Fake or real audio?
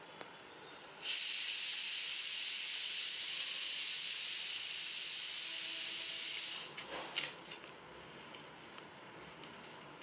real